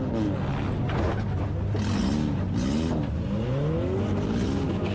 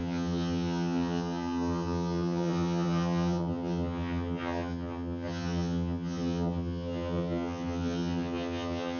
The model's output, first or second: second